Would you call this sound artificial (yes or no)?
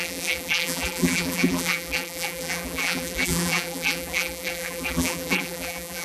yes